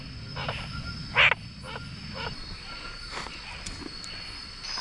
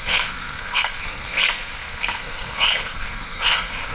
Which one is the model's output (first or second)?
second